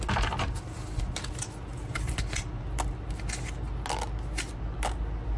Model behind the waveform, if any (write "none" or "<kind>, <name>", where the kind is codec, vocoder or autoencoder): none